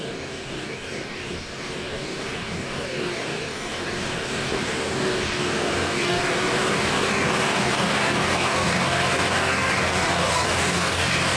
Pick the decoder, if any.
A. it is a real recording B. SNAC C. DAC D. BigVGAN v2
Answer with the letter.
C